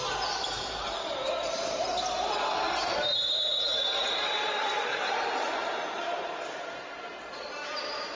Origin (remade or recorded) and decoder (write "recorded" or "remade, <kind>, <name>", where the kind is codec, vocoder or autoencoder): remade, vocoder, BigVGAN v2